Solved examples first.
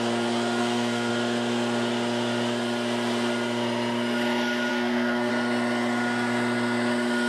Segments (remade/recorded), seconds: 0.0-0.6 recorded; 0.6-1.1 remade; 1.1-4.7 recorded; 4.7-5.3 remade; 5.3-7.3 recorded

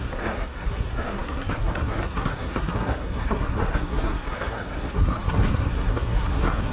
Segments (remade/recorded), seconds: 0.0-6.7 remade

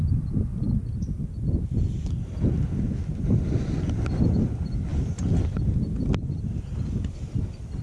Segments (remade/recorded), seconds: 0.0-7.8 recorded

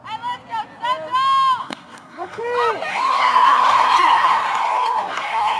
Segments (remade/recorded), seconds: 0.0-1.6 recorded; 1.6-2.4 remade; 2.4-2.9 recorded; 2.9-5.6 remade

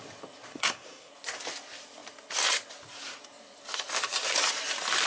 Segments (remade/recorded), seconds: 0.0-0.5 recorded; 0.5-1.1 remade; 1.1-5.1 recorded

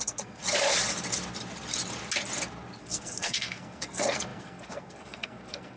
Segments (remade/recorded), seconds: 0.0-0.4 remade; 0.4-2.8 recorded; 2.8-5.8 remade

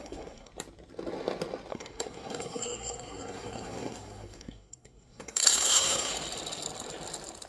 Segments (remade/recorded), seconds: 0.0-0.5 remade; 0.5-1.7 recorded; 1.7-6.1 remade; 6.1-7.5 recorded

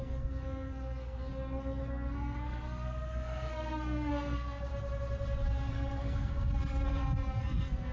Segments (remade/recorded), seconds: 0.0-4.7 remade; 4.7-5.7 recorded; 5.7-7.9 remade